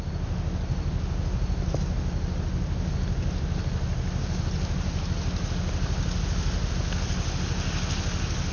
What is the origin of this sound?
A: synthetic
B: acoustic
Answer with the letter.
B